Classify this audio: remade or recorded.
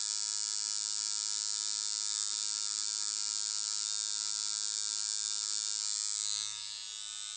recorded